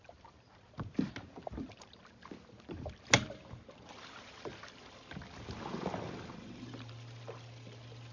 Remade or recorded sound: recorded